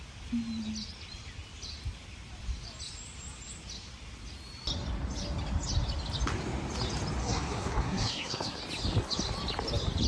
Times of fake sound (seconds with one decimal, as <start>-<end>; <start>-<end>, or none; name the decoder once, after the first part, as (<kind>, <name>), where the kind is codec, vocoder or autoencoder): 7.2-8.6 (codec, SNAC)